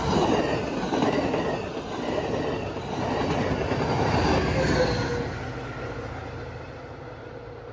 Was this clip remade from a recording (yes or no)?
no